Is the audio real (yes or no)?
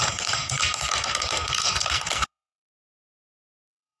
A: no